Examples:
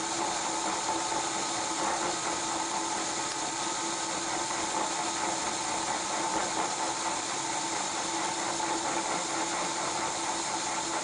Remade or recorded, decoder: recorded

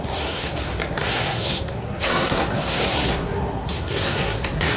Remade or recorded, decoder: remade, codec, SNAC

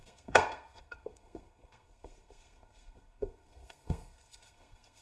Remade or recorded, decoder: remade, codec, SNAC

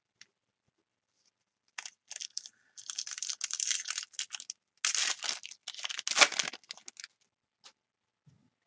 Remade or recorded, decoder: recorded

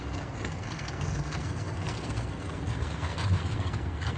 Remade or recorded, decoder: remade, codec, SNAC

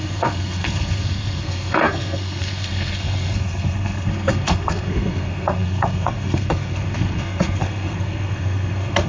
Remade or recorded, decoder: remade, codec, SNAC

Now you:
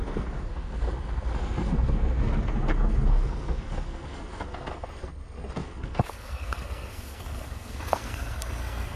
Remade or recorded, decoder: remade, codec, SNAC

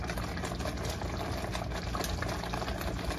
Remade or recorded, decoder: recorded